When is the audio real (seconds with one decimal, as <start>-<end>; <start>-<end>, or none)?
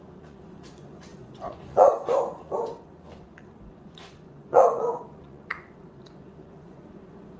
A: none